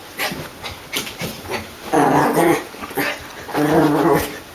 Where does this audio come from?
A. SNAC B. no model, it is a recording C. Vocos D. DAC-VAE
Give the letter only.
B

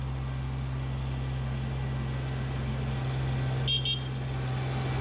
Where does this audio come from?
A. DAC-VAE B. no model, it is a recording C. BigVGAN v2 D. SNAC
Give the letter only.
B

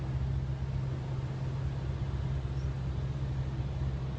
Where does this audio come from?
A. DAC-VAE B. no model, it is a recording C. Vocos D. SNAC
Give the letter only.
B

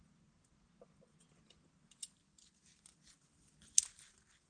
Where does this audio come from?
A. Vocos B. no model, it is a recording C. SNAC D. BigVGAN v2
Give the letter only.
B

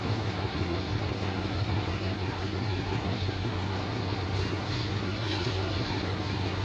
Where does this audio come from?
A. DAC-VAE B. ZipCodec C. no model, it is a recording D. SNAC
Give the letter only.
D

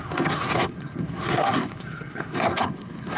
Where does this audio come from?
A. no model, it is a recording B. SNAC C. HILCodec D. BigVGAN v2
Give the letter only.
B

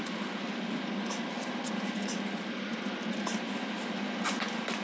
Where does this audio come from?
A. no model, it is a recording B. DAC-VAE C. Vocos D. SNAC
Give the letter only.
A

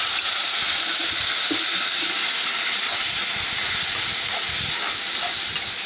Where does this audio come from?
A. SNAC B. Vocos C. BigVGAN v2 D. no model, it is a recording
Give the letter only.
D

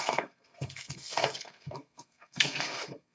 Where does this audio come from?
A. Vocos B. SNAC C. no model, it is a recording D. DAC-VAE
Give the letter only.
B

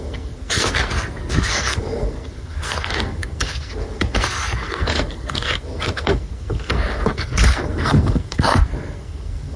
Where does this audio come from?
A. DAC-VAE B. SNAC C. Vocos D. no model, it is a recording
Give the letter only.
B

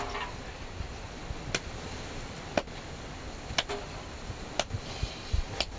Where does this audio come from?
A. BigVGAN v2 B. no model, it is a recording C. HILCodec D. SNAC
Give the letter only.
B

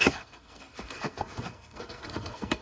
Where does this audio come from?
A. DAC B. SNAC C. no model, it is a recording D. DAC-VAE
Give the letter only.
B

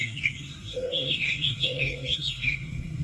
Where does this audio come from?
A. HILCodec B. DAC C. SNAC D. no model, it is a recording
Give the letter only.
C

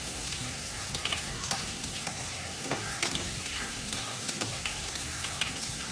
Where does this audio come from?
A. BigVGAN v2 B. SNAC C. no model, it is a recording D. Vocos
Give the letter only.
B